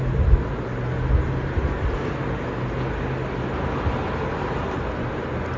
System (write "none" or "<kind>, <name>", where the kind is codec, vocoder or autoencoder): none